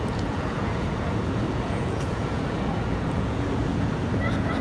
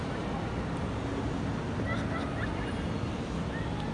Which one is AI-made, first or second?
first